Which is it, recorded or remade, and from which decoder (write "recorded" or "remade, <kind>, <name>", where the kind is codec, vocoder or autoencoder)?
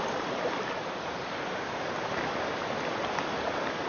remade, vocoder, BigVGAN v2